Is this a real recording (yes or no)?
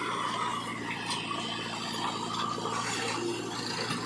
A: yes